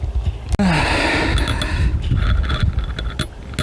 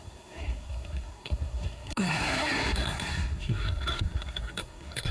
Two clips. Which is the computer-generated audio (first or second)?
second